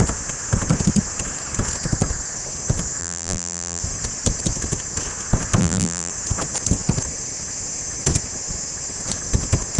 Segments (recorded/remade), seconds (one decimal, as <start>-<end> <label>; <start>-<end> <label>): 0.0-3.0 recorded; 3.0-3.8 remade; 3.8-5.6 recorded; 5.6-6.1 remade; 6.1-9.8 recorded